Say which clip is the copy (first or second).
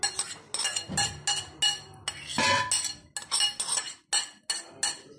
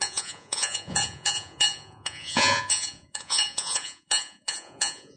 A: second